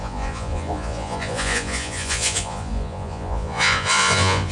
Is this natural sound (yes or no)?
no